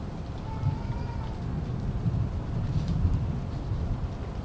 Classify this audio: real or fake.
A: real